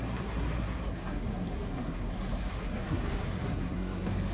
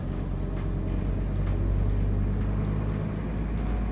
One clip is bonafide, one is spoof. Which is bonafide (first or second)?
second